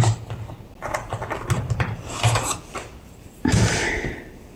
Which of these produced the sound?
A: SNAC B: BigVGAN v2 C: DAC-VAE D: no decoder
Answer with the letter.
D